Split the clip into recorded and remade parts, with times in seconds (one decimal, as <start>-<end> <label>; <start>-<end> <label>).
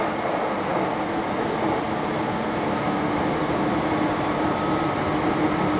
0.0-5.8 recorded